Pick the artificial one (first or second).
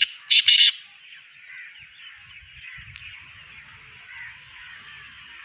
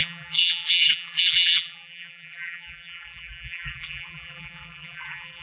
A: second